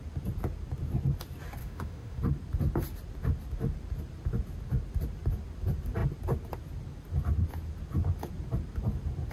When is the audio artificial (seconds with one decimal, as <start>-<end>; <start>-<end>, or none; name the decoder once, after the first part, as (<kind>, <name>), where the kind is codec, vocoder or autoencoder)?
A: 1.6-2.2 (autoencoder, DAC-VAE)